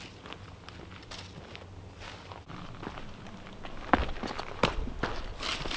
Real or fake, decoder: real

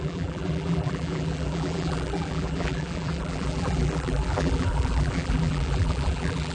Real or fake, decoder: fake, vocoder, BigVGAN v2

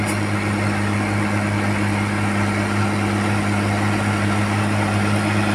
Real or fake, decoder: real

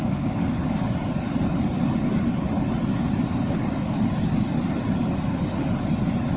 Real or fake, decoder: fake, vocoder, BigVGAN v2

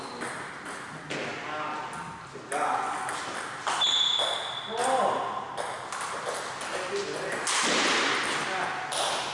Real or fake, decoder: real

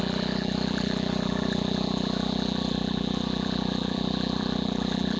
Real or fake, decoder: fake, vocoder, BigVGAN v2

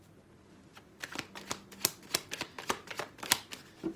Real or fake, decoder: real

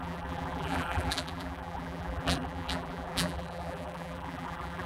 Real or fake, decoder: fake, vocoder, BigVGAN v2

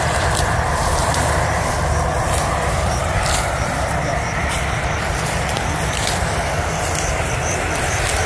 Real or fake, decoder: fake, vocoder, BigVGAN v2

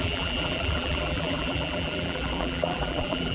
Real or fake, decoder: fake, vocoder, BigVGAN v2